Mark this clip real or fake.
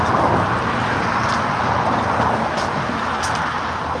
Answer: real